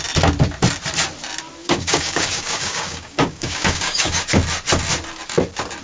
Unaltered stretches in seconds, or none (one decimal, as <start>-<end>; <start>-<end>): 0.0-1.6; 4.2-5.8